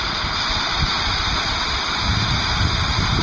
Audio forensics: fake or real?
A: real